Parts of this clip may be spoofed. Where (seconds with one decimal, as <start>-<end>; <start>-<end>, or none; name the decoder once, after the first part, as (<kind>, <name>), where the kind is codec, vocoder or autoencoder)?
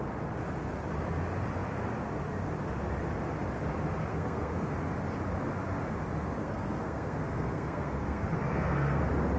4.1-4.7 (codec, SNAC); 6.4-9.0